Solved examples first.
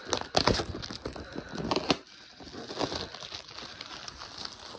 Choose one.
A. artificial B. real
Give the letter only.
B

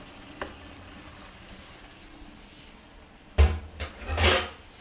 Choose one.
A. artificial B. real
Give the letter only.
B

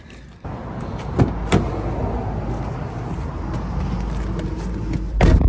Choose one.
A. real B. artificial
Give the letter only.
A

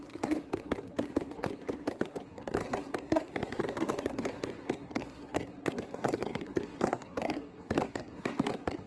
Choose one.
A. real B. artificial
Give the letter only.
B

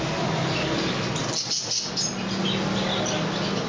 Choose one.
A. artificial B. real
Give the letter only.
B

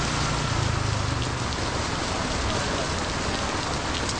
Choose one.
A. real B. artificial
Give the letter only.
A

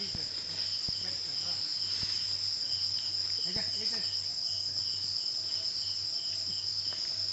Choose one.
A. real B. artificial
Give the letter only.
A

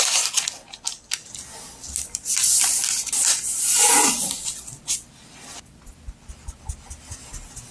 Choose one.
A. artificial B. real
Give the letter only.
B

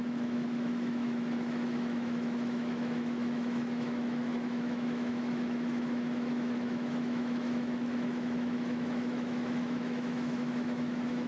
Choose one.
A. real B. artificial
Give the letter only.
B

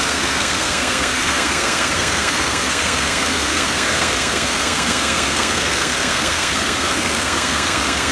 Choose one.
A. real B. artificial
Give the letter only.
B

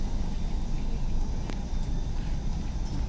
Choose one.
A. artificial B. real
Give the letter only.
B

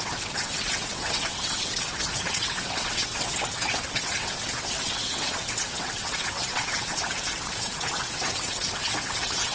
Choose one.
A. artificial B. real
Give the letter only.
A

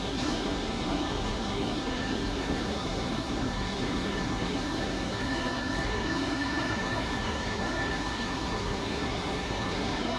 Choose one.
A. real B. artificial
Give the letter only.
B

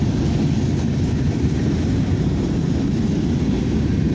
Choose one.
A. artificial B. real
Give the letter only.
B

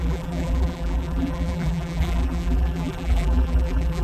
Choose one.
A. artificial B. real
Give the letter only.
A